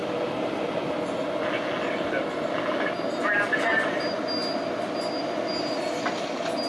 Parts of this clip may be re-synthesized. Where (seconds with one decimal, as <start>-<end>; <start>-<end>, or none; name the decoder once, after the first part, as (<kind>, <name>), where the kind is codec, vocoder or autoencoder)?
none